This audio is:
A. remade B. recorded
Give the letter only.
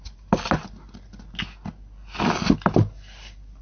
B